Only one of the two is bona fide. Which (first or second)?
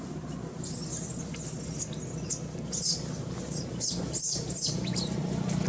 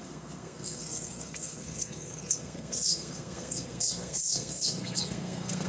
first